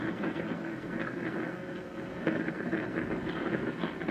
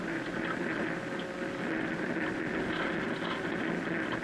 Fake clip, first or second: first